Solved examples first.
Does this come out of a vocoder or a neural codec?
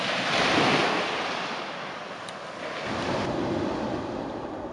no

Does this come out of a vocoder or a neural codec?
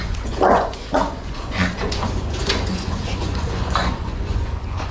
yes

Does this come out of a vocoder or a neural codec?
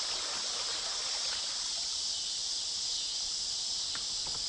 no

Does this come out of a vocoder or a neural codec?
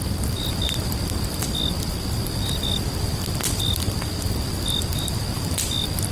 no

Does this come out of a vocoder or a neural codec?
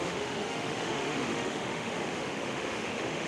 yes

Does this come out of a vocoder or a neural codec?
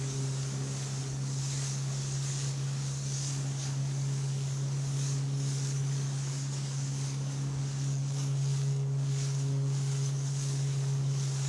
yes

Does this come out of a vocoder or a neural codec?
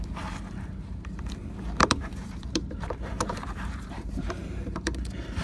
yes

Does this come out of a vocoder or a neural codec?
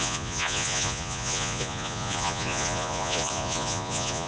yes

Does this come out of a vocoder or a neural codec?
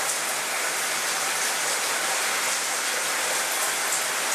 no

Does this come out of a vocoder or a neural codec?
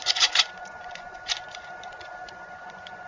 yes